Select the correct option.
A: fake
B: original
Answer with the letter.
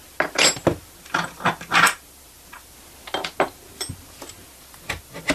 B